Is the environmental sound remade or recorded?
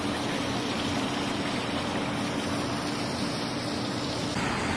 recorded